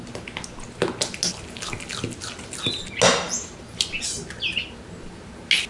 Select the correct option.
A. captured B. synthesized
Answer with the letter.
A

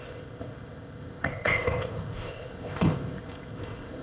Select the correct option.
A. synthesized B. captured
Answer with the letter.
A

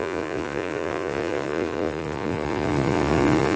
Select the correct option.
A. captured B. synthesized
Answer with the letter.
B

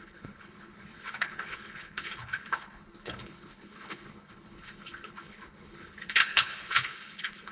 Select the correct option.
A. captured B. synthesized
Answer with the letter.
B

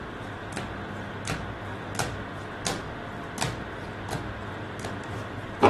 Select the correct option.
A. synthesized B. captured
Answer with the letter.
B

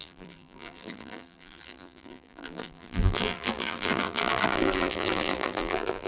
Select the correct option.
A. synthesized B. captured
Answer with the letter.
A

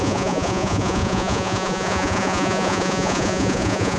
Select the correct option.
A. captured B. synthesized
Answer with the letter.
B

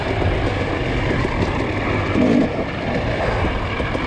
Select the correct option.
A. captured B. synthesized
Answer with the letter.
B